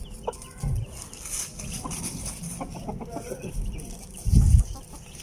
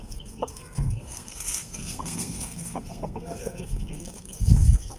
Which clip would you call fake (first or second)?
second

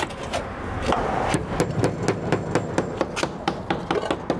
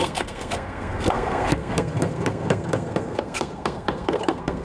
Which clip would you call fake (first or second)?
second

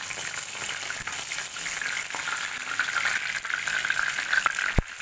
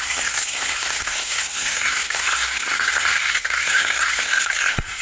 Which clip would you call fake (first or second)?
second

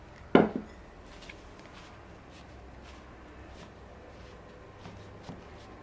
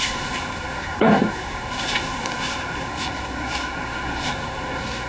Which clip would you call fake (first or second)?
second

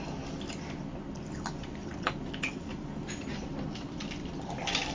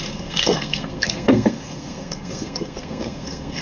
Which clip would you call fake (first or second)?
second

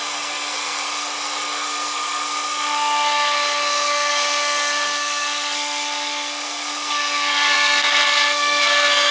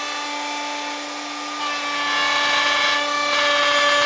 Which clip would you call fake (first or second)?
first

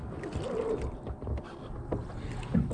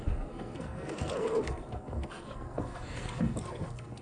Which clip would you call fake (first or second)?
second